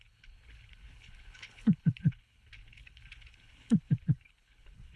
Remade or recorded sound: remade